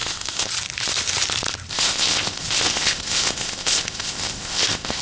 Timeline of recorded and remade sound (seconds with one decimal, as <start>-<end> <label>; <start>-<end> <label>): 0.0-0.5 remade; 0.5-1.7 recorded; 1.7-5.0 remade